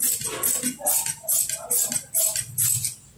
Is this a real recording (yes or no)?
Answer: yes